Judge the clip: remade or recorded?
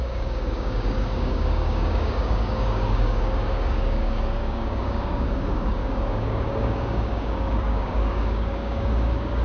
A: remade